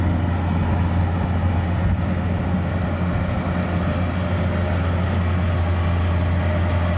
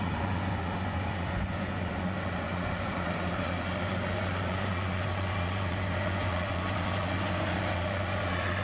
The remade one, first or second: second